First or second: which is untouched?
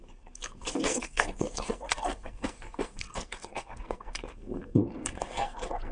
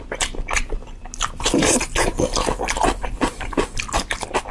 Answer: second